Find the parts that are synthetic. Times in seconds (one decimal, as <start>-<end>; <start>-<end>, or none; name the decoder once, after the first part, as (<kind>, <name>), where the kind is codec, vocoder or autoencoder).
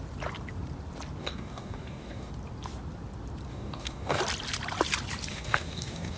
1.2-2.3 (codec, DAC); 3.5-4.2; 5.3-6.2